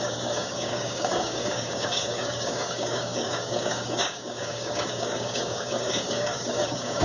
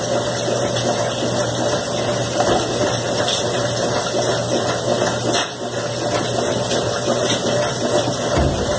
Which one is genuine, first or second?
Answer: second